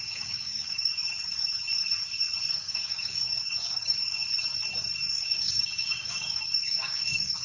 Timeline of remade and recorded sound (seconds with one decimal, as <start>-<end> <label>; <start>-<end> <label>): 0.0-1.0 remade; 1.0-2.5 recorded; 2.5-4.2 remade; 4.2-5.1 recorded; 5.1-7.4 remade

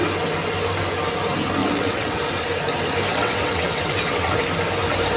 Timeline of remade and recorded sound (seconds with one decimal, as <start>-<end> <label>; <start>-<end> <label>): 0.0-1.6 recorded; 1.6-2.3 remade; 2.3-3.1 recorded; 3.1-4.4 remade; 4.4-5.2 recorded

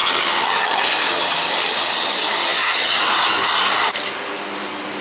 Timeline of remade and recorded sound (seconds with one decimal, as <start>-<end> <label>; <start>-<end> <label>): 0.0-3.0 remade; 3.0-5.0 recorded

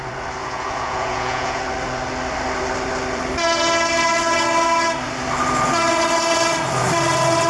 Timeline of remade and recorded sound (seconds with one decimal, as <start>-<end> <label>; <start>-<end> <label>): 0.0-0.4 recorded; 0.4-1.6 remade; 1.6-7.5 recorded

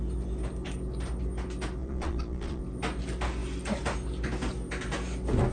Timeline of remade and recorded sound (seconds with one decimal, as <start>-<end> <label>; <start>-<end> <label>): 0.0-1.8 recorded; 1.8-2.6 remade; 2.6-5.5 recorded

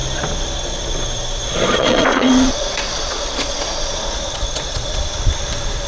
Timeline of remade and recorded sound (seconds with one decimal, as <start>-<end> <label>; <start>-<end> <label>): 0.0-1.5 recorded; 1.5-5.0 remade; 5.0-5.9 recorded

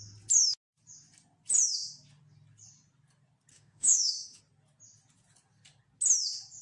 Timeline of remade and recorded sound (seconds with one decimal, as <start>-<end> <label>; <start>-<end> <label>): 0.0-3.5 recorded; 3.5-4.4 remade; 4.4-6.6 recorded